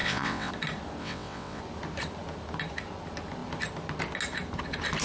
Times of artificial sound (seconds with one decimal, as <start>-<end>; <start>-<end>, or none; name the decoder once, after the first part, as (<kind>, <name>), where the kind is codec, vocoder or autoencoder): 0.0-0.5 (vocoder, WaveNeXt); 1.0-1.6